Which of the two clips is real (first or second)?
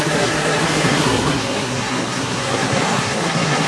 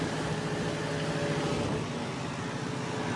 second